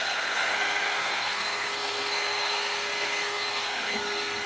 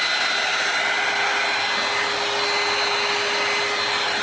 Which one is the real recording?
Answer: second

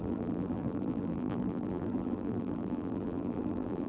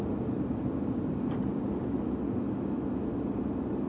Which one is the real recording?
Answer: second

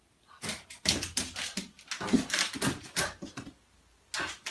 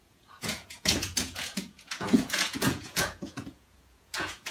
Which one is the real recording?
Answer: first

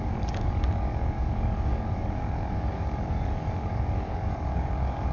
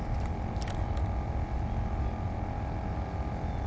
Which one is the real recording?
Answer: second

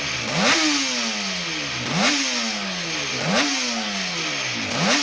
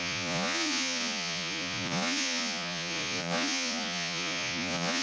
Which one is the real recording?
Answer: first